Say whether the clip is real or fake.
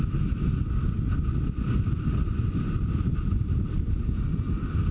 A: real